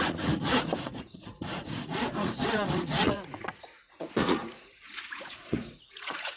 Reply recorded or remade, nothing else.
remade